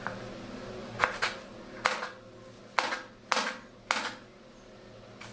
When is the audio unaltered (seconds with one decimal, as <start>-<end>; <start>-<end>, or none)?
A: 0.0-0.8; 1.5-5.3